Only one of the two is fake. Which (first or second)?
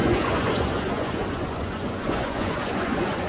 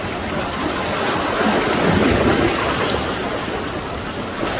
first